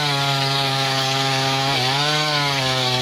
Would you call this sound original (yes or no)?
no